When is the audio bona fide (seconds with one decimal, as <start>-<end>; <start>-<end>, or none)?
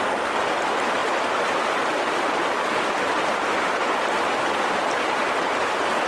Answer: 0.0-6.1